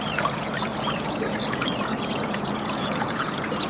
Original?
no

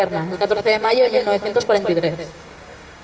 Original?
no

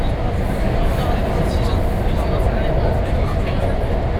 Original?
yes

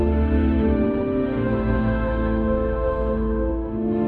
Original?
no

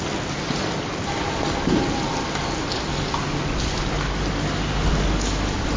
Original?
yes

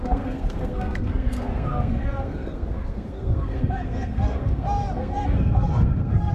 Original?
no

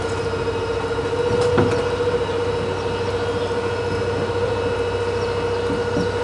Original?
yes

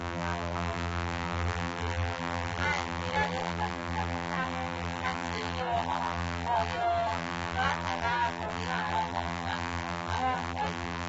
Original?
no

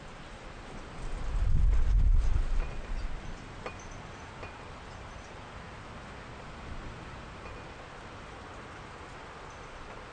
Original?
yes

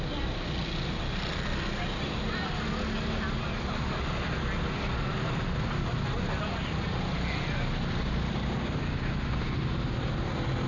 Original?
yes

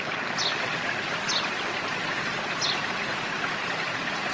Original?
yes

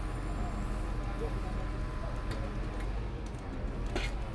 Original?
yes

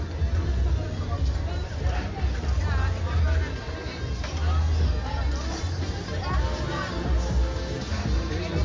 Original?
yes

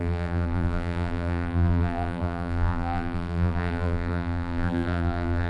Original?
no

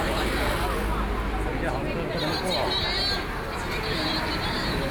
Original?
yes